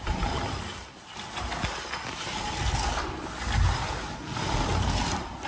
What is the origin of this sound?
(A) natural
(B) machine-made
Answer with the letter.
A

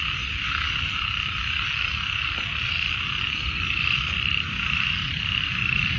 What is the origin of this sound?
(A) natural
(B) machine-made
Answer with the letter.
B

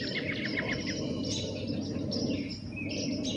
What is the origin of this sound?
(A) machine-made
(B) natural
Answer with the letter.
B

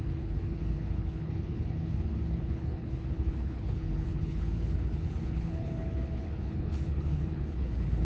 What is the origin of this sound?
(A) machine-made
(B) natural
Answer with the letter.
A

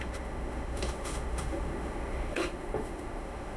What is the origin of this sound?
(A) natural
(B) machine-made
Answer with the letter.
B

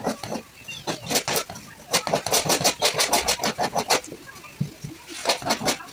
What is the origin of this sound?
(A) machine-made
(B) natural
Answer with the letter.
B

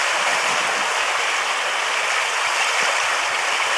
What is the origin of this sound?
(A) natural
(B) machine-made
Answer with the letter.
A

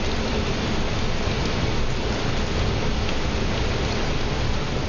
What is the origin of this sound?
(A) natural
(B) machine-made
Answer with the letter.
A